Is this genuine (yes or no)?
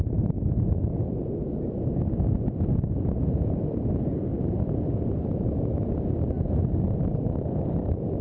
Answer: yes